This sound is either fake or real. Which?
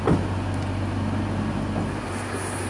real